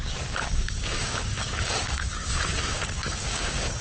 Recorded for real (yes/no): no